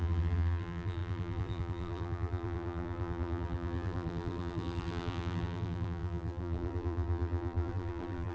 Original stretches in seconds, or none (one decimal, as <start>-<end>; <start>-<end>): none